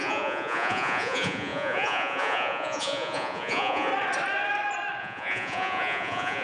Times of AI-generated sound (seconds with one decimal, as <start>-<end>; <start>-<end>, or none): 0.0-3.9; 5.0-6.4